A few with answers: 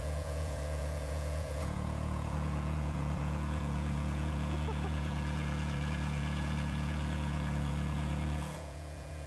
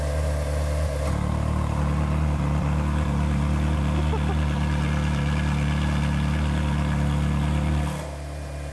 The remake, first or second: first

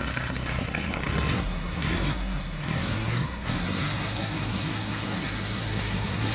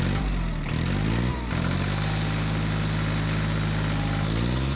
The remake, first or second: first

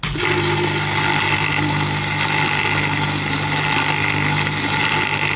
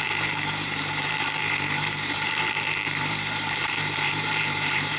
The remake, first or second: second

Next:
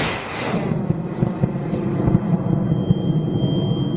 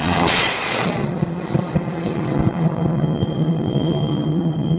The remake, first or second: second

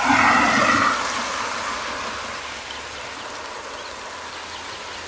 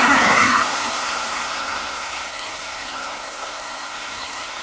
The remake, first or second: second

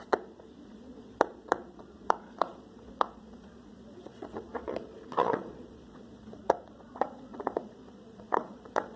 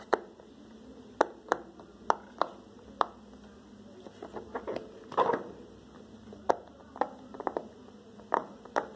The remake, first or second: first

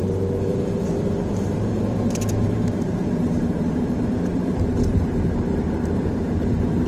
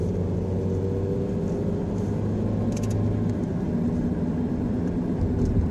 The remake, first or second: first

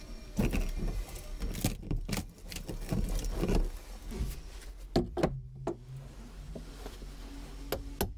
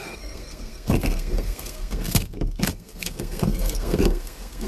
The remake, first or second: second